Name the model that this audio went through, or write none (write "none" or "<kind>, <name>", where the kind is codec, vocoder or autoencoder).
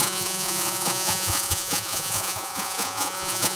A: vocoder, Vocos